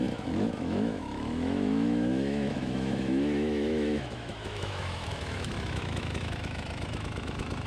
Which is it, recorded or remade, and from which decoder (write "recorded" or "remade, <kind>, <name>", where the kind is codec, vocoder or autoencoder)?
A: remade, autoencoder, DAC-VAE